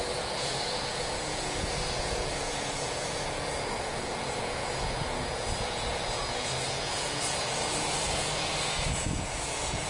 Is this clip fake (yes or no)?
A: yes